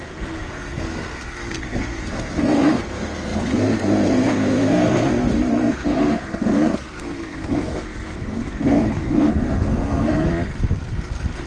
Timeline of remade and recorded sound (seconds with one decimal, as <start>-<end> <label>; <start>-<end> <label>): 0.0-10.3 remade; 10.3-11.5 recorded